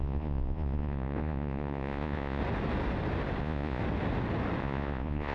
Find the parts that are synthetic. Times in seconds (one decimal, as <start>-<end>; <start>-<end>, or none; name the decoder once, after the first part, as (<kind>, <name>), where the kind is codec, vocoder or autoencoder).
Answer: 0.0-2.4 (vocoder, Vocos); 3.4-3.8; 4.6-5.3